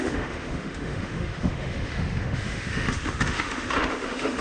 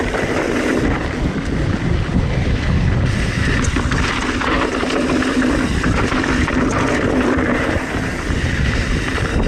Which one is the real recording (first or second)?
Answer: second